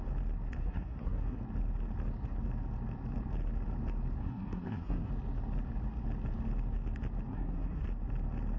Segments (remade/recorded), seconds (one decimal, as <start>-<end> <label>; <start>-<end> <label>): 0.0-0.6 recorded; 0.6-1.4 remade; 1.4-4.2 recorded; 4.2-5.1 remade; 5.1-7.3 recorded; 7.3-7.8 remade; 7.8-8.6 recorded